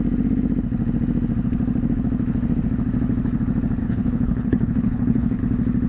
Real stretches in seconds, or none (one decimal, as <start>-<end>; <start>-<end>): 0.0-3.8; 5.4-5.9